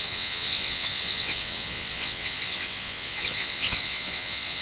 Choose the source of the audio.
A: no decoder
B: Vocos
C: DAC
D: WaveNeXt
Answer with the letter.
D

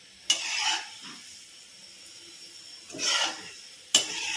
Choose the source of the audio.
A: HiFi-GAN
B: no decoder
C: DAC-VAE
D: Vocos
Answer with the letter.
B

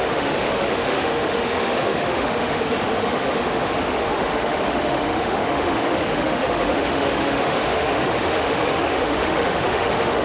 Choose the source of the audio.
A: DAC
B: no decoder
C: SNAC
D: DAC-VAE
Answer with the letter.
D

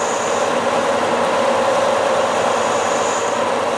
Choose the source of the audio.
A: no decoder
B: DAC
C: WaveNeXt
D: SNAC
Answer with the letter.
A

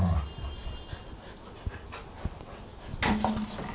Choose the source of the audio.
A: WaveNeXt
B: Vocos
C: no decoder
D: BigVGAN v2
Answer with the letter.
C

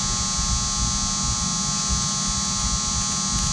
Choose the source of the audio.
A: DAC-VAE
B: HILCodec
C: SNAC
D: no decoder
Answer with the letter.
D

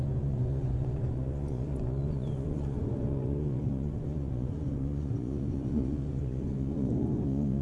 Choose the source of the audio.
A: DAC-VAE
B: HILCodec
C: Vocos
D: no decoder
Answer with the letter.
C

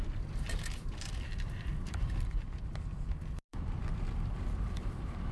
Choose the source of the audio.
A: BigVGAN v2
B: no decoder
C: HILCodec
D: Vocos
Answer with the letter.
A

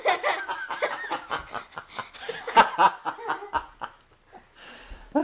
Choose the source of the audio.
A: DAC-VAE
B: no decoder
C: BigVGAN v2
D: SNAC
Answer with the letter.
B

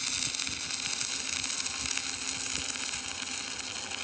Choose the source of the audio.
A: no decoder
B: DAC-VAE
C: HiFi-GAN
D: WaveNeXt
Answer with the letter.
A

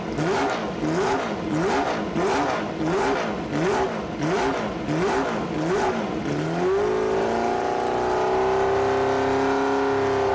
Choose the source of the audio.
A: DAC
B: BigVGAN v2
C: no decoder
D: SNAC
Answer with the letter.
C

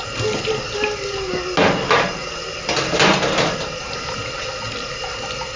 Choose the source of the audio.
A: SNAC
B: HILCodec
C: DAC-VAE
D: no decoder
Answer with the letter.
D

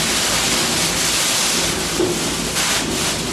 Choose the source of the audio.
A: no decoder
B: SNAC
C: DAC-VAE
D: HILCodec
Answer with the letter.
A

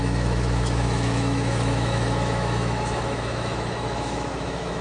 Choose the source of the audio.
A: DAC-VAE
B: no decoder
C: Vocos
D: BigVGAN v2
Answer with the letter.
A